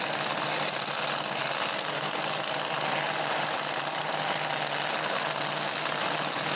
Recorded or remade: recorded